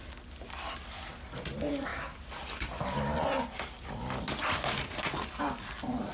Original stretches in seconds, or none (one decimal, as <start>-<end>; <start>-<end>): 0.0-6.1